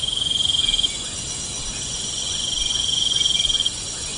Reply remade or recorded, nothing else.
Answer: remade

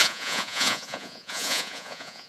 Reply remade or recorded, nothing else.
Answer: remade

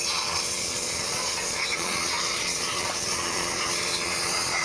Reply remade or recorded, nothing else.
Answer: remade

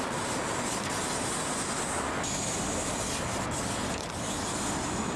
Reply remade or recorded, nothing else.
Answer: recorded